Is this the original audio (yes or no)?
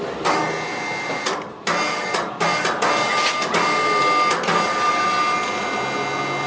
yes